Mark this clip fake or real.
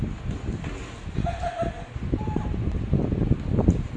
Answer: real